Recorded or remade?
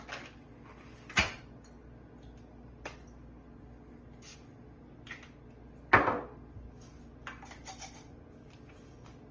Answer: recorded